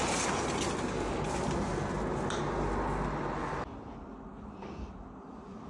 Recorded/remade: recorded